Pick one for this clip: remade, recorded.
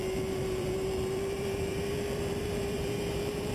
remade